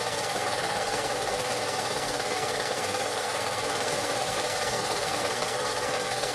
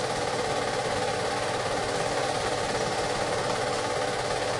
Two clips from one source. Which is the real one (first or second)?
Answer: second